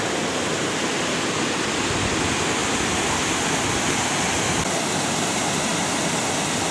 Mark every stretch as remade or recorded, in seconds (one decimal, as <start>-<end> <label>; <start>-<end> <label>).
0.0-6.7 recorded